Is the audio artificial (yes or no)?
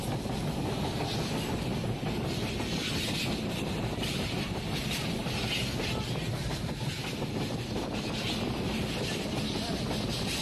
no